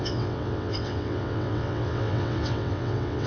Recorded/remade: remade